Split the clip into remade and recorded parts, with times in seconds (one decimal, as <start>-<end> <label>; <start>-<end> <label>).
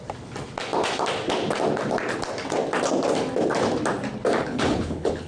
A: 0.0-4.4 recorded; 4.4-5.3 remade